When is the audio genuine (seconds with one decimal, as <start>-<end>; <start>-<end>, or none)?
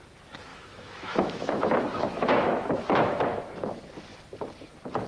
0.0-0.5; 3.4-5.1